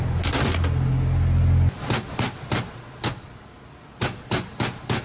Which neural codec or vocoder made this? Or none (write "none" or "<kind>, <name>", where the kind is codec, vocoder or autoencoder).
none